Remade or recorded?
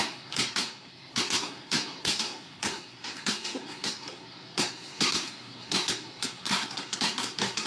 remade